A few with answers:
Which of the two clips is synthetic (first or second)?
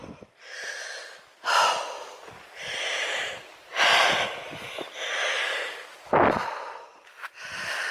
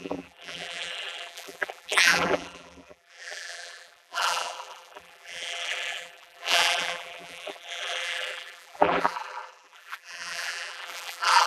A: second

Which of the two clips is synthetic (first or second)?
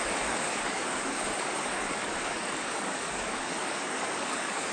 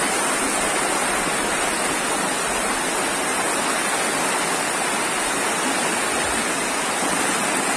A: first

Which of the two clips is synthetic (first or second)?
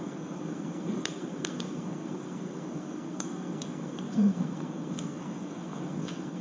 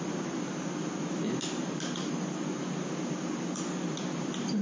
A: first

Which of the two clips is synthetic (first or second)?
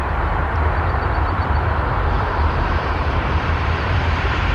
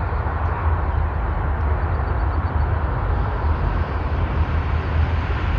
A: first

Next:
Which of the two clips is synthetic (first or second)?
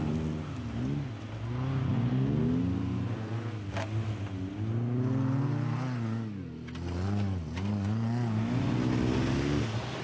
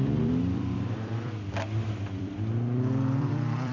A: second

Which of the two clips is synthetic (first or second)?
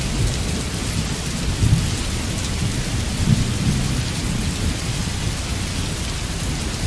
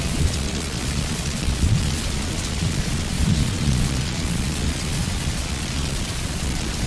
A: second